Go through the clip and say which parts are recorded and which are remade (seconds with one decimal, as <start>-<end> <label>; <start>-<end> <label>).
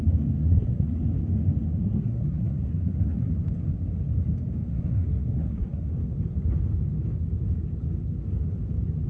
0.0-0.4 recorded; 0.4-1.0 remade; 1.0-1.8 recorded; 1.8-3.3 remade; 3.3-4.7 recorded; 4.7-5.9 remade; 5.9-9.1 recorded